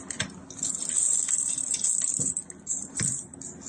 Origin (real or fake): real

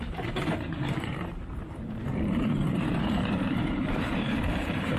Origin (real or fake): fake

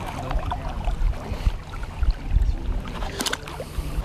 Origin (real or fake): real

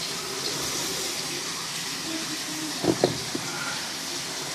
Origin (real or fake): real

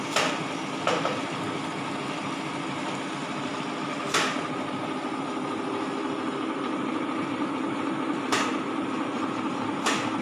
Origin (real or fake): fake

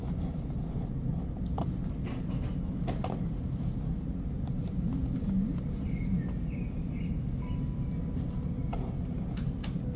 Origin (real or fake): real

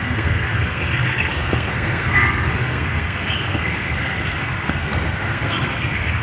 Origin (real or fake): fake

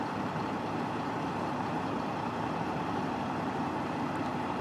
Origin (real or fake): fake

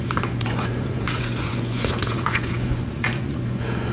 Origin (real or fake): fake